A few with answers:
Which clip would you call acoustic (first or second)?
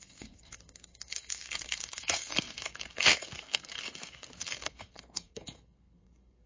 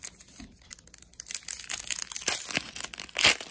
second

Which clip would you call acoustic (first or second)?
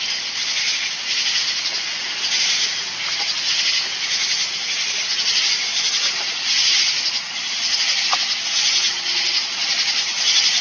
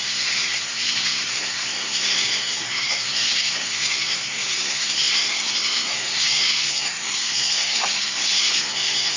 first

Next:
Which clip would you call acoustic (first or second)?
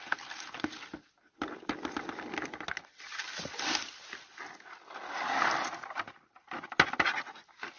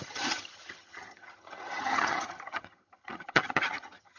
first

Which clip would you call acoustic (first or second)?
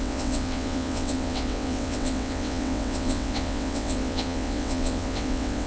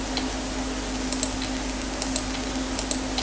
second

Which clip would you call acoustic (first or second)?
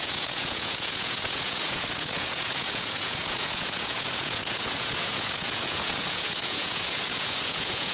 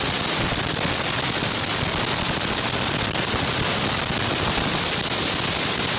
second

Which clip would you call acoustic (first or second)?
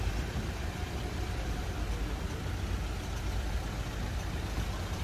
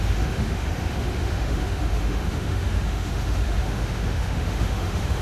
first